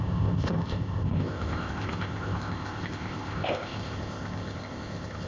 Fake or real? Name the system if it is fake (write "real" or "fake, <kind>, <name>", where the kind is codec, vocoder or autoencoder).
fake, codec, ZipCodec